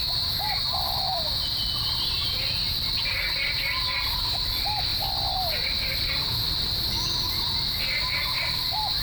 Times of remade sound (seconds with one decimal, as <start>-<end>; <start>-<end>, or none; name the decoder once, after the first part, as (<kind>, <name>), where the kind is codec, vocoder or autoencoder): 4.9-6.1 (vocoder, BigVGAN v2)